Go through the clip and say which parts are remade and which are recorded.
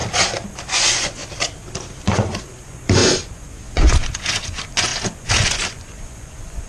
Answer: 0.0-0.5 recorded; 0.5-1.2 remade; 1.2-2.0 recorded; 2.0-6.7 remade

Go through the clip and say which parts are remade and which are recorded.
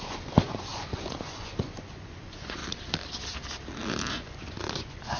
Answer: 0.0-2.6 remade; 2.6-4.1 recorded; 4.1-5.2 remade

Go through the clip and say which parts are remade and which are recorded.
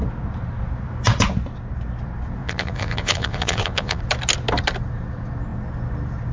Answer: 0.0-2.4 recorded; 2.4-4.0 remade; 4.0-6.3 recorded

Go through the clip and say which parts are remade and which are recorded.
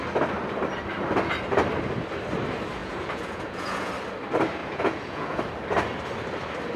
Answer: 0.0-2.8 recorded; 2.8-3.9 remade; 3.9-4.6 recorded; 4.6-5.4 remade; 5.4-6.8 recorded